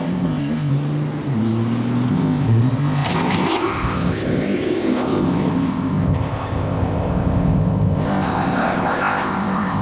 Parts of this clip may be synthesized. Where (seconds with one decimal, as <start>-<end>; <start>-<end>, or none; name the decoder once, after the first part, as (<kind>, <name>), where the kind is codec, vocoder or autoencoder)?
0.0-0.7 (codec, ZipCodec); 2.1-9.8